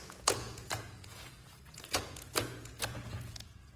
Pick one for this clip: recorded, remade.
remade